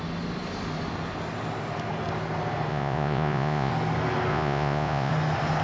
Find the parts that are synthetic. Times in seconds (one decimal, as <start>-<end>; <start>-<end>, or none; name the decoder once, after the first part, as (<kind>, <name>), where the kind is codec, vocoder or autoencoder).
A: 2.7-3.7 (vocoder, Vocos); 4.3-5.1